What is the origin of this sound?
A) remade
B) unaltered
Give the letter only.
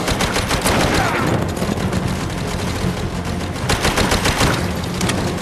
B